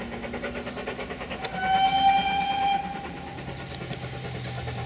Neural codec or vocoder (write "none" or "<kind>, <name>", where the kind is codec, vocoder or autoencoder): none